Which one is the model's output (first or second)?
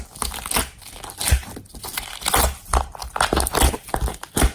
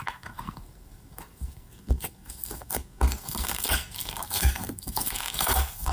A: second